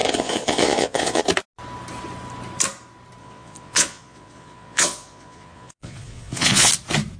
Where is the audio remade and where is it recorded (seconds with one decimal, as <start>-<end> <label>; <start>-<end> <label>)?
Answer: 0.0-1.2 remade; 1.2-3.2 recorded; 3.2-6.7 remade; 6.7-7.2 recorded